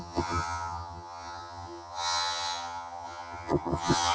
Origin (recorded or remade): remade